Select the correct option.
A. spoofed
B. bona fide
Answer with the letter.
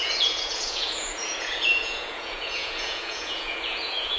A